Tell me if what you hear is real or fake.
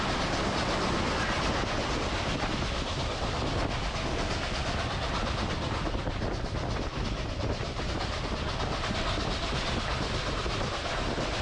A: real